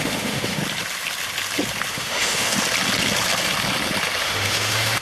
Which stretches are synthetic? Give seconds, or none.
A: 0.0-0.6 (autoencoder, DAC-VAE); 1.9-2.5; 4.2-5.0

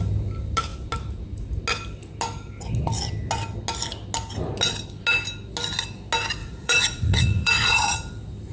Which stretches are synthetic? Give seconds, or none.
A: 6.4-7.8 (vocoder, Vocos)

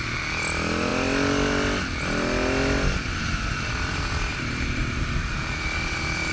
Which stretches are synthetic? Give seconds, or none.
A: 4.3-5.0 (vocoder, BigVGAN v2)

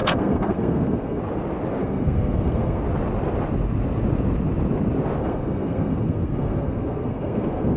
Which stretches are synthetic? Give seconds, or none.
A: 0.0-1.2 (codec, SNAC); 1.8-2.8; 5.2-7.8